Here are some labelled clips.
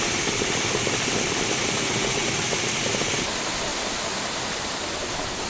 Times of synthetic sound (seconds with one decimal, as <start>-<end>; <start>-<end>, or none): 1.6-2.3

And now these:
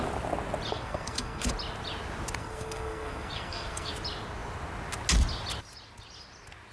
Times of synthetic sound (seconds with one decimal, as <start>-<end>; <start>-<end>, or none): 0.7-1.5; 2.4-3.9

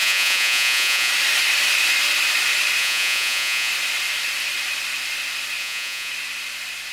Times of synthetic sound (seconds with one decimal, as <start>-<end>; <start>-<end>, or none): 0.0-1.1; 2.8-3.7; 5.6-6.1

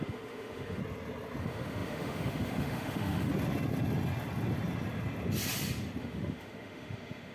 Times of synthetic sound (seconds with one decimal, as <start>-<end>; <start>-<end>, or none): 0.0-0.8; 1.4-3.3; 6.0-7.3

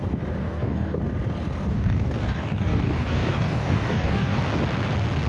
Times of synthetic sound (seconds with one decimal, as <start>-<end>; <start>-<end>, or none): 0.4-1.0; 1.7-4.4